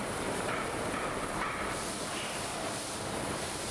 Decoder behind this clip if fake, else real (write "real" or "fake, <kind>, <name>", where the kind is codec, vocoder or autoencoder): fake, vocoder, BigVGAN v2